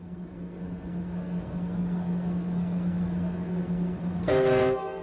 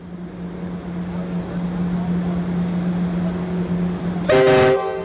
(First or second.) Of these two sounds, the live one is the second